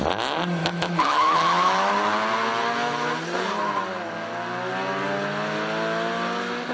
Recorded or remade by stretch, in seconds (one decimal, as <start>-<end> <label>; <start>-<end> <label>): 0.0-0.6 recorded; 0.6-1.9 remade; 1.9-6.7 recorded